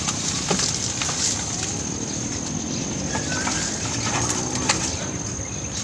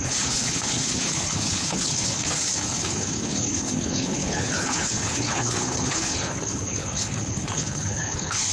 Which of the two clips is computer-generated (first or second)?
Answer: second